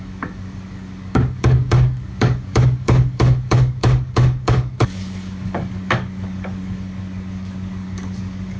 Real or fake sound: fake